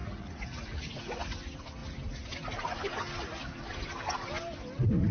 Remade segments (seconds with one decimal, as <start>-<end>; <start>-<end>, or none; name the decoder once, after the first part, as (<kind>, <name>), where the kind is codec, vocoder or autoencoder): 0.0-1.0 (vocoder, Vocos)